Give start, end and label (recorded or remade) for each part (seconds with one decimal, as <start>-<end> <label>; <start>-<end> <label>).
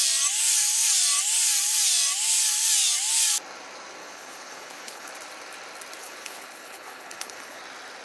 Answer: 0.0-4.0 recorded; 4.0-5.1 remade; 5.1-6.0 recorded; 6.0-7.6 remade; 7.6-8.0 recorded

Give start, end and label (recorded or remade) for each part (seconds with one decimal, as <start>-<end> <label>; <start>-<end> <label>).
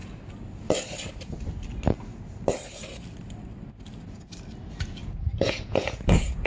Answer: 0.0-5.0 recorded; 5.0-6.5 remade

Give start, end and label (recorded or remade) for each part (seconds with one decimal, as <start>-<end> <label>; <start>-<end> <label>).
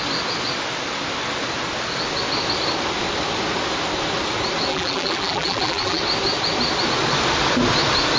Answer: 0.0-4.7 recorded; 4.7-6.0 remade; 6.0-8.2 recorded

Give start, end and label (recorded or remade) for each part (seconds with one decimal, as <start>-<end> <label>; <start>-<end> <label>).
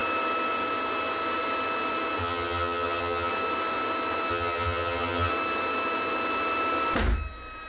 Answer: 0.0-2.2 recorded; 2.2-3.3 remade; 3.3-4.3 recorded; 4.3-5.3 remade; 5.3-7.7 recorded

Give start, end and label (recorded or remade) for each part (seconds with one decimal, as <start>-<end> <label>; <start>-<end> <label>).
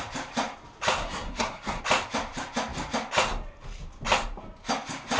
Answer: 0.0-1.0 recorded; 1.0-1.8 remade; 1.8-5.2 recorded